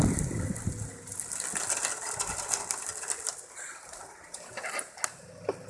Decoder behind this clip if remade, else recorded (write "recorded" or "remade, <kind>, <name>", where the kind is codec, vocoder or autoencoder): recorded